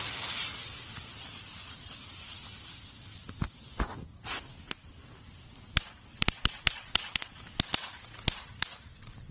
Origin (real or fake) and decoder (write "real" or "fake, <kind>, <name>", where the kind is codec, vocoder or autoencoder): real